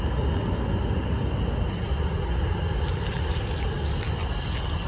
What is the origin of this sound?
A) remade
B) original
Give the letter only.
B